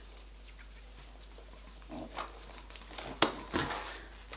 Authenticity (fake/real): real